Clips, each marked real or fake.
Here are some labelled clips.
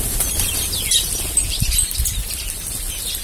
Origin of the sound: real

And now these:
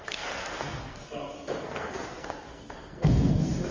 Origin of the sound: fake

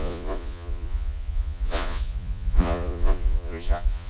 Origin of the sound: fake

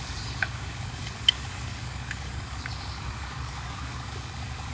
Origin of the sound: fake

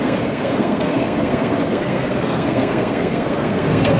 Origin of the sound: fake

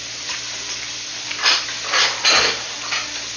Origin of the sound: real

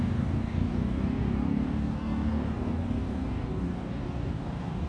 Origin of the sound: fake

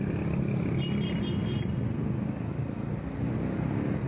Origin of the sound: real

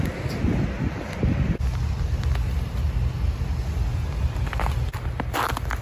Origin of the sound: real